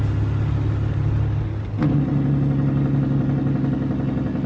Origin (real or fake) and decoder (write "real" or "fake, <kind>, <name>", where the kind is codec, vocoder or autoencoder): real